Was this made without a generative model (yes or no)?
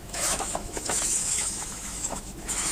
no